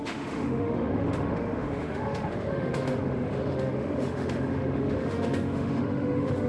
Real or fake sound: fake